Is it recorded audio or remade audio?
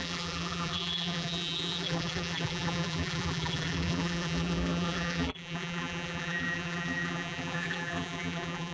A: remade